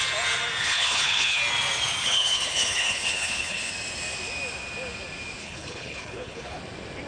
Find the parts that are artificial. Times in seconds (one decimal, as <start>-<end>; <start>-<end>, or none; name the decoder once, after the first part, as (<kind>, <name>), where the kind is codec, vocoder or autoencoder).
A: 0.6-1.4 (codec, HILCodec); 2.0-3.7; 5.4-6.6